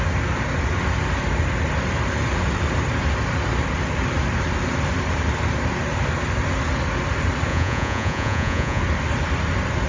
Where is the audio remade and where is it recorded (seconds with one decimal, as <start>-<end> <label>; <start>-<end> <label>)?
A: 0.0-7.5 recorded; 7.5-8.8 remade; 8.8-9.9 recorded